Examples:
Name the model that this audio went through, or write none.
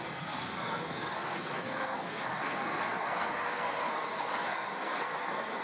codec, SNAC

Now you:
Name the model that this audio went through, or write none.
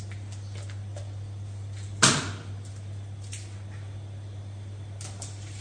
none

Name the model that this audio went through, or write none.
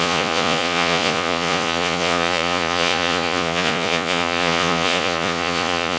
vocoder, Vocos